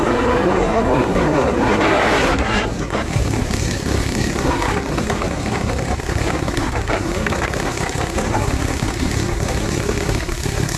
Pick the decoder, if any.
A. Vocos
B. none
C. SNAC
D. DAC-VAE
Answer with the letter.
C